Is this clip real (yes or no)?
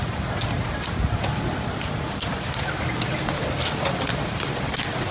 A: yes